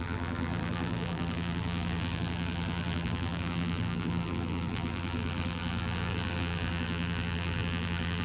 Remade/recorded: remade